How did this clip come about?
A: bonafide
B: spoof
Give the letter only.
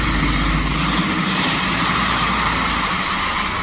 B